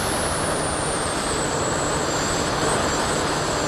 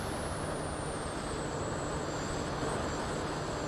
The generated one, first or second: first